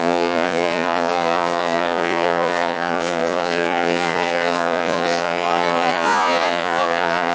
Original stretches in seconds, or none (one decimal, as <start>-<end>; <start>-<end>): none